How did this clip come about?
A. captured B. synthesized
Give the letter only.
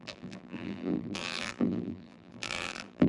B